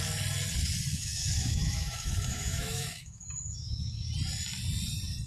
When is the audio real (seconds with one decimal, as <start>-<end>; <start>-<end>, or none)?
0.0-0.9; 4.1-5.3

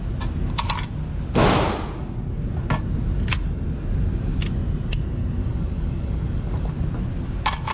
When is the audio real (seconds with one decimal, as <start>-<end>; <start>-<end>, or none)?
0.0-5.4; 6.7-7.7

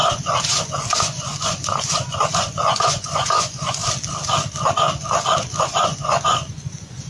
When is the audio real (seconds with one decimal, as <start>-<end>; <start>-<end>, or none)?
3.8-5.6

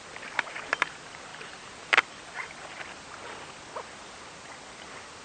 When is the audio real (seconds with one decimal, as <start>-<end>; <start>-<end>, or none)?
0.0-5.2

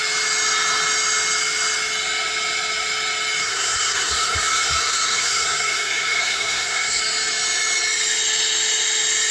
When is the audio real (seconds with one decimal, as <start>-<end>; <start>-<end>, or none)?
0.0-3.4; 7.0-9.3

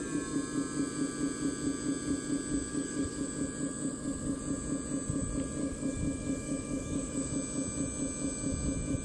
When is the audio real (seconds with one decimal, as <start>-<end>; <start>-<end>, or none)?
0.0-2.7; 3.3-3.9; 4.4-5.6; 7.3-9.0

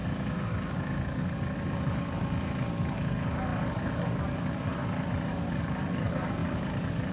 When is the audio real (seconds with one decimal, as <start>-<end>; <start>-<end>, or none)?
4.7-5.3